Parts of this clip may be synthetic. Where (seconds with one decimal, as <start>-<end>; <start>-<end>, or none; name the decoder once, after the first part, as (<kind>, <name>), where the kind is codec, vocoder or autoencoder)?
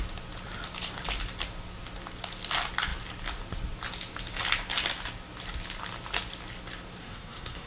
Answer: 7.0-7.7 (codec, SNAC)